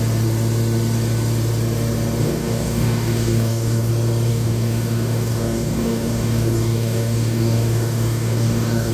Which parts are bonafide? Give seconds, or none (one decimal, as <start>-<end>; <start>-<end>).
0.0-2.2; 3.9-4.3